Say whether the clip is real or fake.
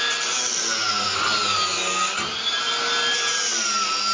real